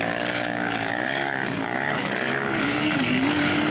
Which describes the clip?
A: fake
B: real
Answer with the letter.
A